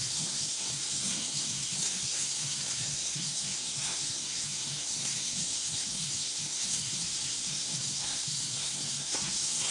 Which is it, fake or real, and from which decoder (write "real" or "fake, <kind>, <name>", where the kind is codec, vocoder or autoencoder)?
fake, codec, SNAC